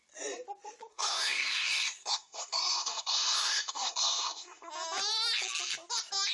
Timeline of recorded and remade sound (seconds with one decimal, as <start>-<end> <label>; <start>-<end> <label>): 0.0-0.9 recorded; 0.9-4.7 remade; 4.7-6.3 recorded